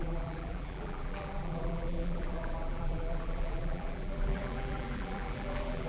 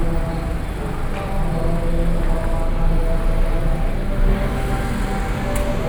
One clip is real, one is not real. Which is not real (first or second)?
first